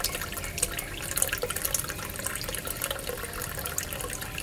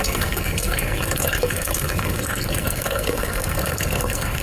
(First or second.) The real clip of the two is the first